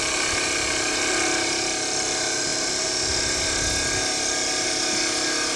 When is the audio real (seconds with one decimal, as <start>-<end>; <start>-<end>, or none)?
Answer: 0.0-5.6